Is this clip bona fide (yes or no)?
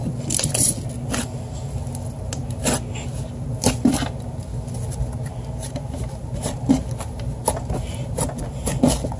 yes